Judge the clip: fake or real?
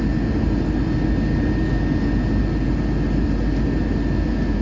real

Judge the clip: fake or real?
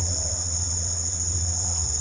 fake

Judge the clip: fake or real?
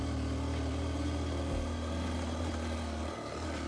real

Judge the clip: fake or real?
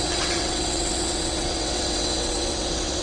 fake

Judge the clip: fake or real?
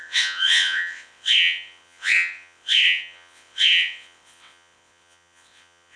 fake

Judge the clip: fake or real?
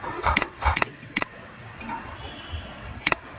fake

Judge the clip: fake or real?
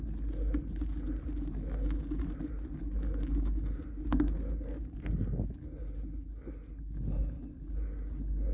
real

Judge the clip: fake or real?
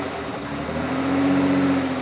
real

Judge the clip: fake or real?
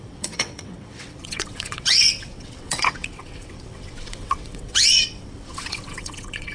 fake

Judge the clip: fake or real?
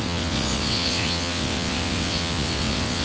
fake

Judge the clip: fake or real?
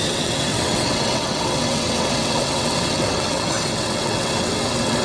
fake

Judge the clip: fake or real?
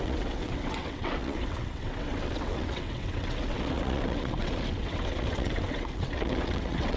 fake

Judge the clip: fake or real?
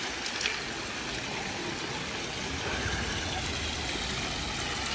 real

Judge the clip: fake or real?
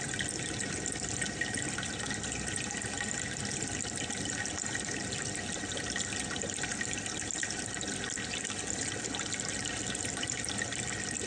real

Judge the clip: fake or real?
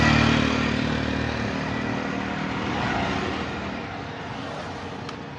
real